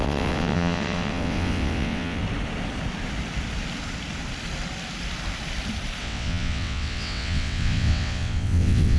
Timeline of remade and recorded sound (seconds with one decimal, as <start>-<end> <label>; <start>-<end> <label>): 0.0-2.2 remade; 2.2-6.0 recorded; 6.0-9.0 remade

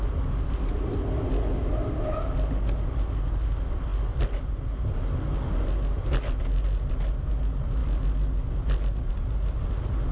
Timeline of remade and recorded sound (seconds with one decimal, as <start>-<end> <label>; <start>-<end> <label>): 0.0-10.1 recorded